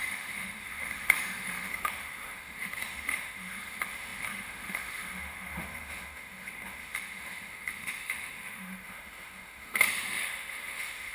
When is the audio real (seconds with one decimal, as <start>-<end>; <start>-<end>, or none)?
none

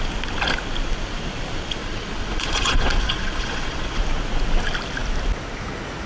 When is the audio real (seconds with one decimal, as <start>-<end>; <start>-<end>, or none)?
0.0-1.8; 4.0-6.1

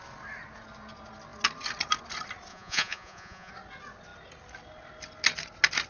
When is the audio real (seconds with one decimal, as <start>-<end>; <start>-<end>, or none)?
0.0-2.5; 3.5-5.9